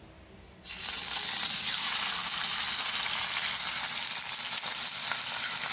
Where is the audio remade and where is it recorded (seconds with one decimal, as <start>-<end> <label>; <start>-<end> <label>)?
0.0-5.7 recorded